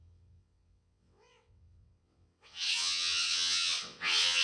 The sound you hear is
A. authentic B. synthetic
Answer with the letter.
B